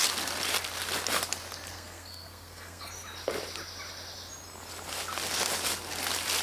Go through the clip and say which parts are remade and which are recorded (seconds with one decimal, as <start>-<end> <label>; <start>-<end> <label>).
0.0-1.7 recorded; 1.7-2.9 remade; 2.9-6.4 recorded